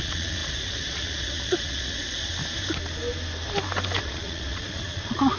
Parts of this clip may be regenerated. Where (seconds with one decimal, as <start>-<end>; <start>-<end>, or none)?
0.0-2.3; 4.0-5.4